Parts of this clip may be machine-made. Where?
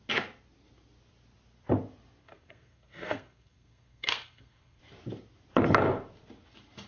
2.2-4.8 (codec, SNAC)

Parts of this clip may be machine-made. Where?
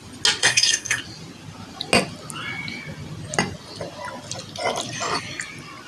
0.4-1.0 (codec, SNAC)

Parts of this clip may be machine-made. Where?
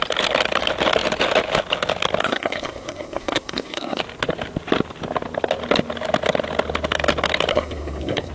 2.2-4.0 (codec, SNAC); 7.5-8.3